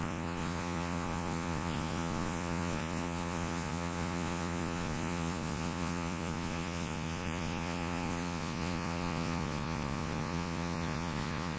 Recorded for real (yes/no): no